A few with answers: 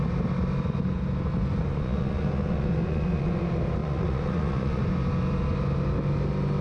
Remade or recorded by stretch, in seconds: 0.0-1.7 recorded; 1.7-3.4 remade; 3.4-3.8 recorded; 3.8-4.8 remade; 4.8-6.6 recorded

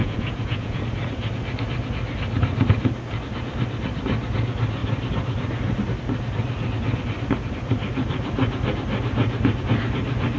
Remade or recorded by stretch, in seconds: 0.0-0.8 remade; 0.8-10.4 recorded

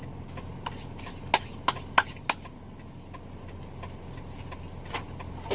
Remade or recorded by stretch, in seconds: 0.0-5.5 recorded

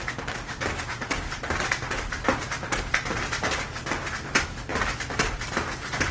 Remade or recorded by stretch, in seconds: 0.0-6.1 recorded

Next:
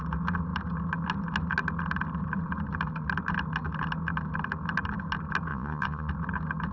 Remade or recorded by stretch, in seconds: 0.0-5.5 recorded; 5.5-6.1 remade; 6.1-6.7 recorded